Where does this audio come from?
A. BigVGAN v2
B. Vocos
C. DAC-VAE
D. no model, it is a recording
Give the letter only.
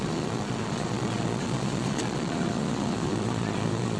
B